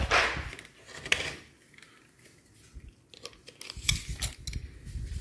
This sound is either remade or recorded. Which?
recorded